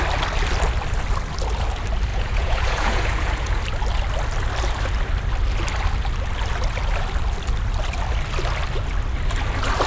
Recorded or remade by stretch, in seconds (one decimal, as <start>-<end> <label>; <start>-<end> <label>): 0.0-2.1 recorded; 2.1-3.6 remade; 3.6-9.9 recorded